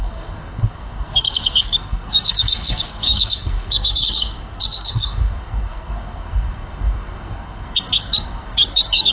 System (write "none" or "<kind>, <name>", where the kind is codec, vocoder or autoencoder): codec, SNAC